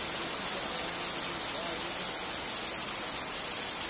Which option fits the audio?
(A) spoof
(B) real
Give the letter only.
B